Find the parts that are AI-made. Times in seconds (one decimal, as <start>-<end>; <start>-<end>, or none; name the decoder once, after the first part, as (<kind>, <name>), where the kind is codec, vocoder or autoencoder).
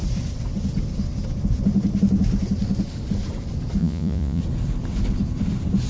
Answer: 3.8-4.4 (vocoder, Vocos)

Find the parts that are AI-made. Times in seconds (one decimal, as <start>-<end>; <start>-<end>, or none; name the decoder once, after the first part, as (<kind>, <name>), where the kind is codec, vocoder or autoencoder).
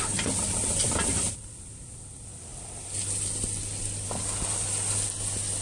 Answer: none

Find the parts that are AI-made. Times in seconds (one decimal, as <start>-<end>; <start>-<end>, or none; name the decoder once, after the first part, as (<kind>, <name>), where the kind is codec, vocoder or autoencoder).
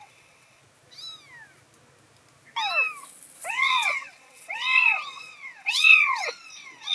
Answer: 0.0-0.6 (vocoder, WaveNeXt); 3.5-6.9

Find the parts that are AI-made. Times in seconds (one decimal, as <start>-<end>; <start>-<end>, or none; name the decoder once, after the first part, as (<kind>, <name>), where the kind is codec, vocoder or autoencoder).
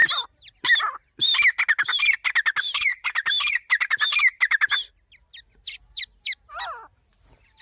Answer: none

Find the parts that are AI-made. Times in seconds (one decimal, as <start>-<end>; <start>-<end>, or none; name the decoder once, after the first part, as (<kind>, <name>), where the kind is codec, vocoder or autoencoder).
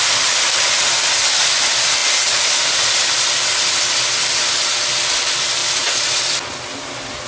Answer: 5.6-6.2 (vocoder, Vocos)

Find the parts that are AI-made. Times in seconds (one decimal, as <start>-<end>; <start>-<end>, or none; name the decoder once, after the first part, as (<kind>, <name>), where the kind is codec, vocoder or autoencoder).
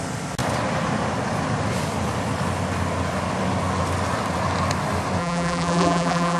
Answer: 5.2-6.4 (vocoder, BigVGAN v2)